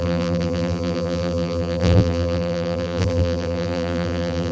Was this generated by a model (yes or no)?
yes